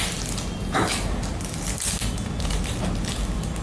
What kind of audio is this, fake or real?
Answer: real